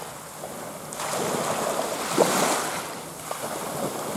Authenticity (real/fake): real